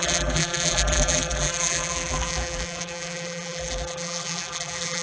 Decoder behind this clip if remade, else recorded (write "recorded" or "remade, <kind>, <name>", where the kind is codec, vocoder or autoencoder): remade, vocoder, BigVGAN v2